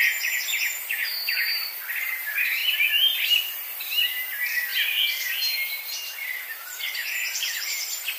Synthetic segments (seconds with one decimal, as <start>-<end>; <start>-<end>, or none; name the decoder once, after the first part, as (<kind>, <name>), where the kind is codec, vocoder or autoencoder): 0.0-1.1 (vocoder, BigVGAN v2); 2.0-2.6; 3.5-8.2